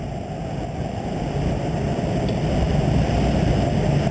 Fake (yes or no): no